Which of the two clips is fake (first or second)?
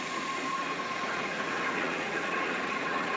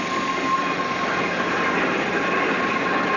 first